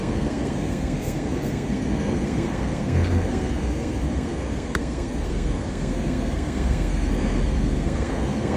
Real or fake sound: fake